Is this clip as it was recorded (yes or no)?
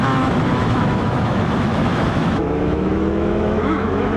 no